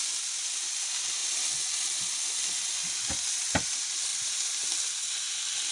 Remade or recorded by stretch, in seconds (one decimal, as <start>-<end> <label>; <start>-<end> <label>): 0.0-5.7 recorded